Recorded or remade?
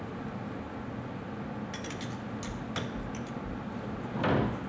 recorded